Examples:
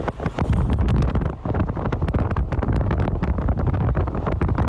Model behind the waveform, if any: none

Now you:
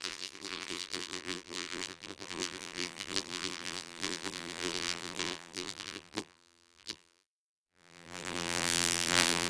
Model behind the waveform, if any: vocoder, BigVGAN v2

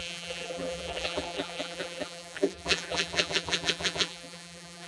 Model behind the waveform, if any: vocoder, BigVGAN v2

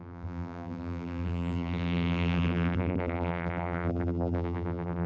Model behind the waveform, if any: vocoder, BigVGAN v2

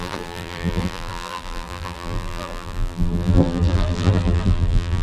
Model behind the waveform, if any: vocoder, BigVGAN v2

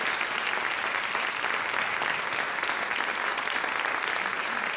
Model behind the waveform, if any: none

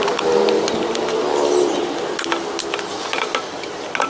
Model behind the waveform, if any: none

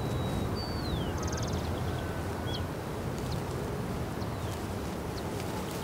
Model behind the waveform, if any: none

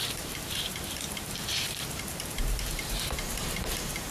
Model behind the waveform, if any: vocoder, BigVGAN v2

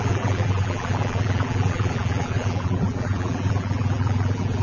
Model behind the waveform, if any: vocoder, BigVGAN v2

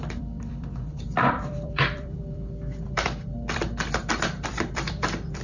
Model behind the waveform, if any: vocoder, BigVGAN v2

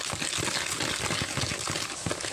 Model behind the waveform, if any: none